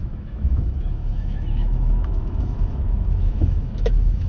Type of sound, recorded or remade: remade